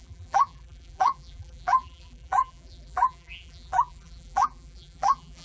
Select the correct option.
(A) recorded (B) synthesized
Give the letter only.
B